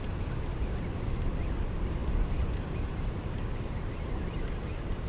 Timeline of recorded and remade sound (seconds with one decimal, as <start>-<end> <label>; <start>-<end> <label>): 0.0-5.1 recorded